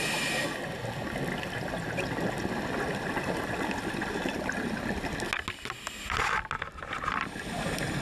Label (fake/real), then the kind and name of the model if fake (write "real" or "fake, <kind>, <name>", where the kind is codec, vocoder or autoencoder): real